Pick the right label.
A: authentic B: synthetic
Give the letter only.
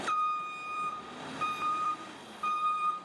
B